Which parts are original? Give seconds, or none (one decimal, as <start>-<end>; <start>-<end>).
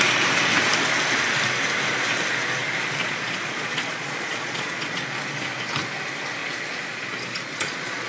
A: 0.0-3.0; 5.0-6.4